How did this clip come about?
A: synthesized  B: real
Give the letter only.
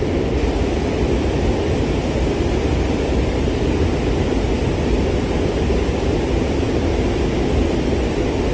B